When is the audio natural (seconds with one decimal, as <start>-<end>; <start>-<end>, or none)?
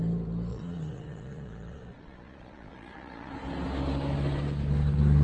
0.0-0.5; 3.3-5.2